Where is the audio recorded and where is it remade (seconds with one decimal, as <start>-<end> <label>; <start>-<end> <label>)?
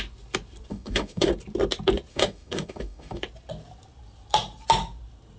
0.0-0.7 recorded; 0.7-1.3 remade; 1.3-2.1 recorded; 2.1-3.2 remade; 3.2-5.4 recorded